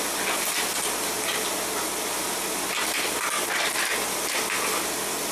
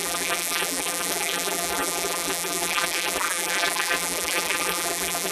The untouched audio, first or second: first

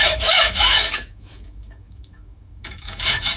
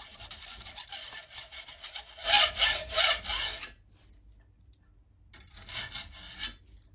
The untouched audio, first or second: second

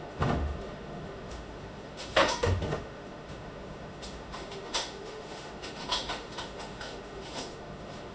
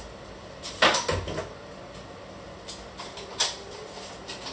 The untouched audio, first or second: second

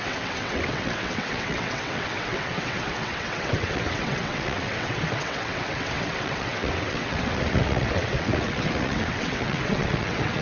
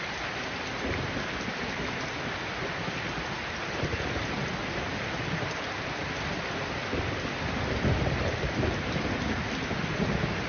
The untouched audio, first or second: second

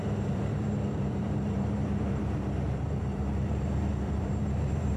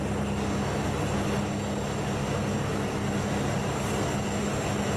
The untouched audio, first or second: second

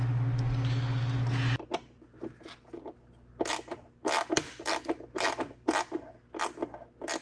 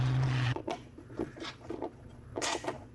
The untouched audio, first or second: first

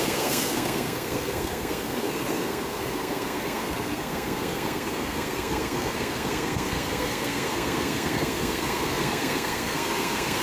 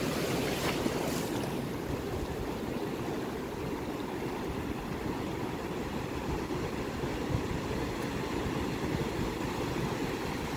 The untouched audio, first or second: second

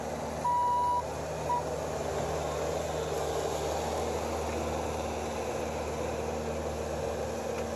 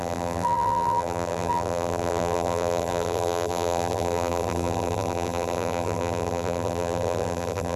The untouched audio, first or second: first